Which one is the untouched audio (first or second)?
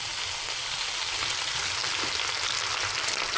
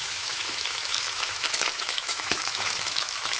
first